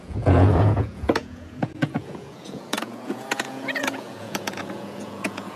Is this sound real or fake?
fake